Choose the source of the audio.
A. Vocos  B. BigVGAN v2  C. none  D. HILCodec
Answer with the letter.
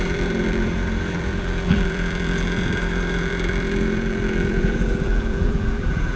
B